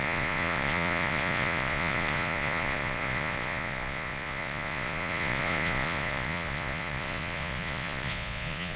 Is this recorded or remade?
remade